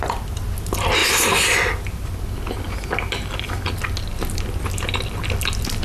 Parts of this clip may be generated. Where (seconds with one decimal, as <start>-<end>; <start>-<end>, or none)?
none